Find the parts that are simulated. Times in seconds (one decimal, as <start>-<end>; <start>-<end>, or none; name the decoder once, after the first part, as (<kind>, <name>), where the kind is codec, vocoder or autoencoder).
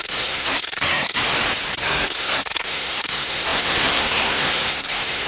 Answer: 0.0-1.2 (codec, SNAC); 1.8-5.3